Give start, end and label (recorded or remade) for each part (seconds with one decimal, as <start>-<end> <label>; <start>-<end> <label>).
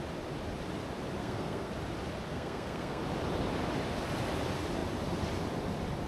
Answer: 0.0-1.2 recorded; 1.2-1.7 remade; 1.7-2.3 recorded; 2.3-3.0 remade; 3.0-6.1 recorded